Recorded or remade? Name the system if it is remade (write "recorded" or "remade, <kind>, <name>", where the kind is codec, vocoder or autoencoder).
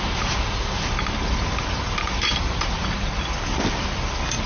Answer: recorded